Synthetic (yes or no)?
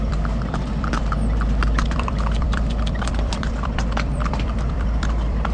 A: yes